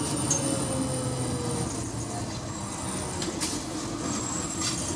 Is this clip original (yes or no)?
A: yes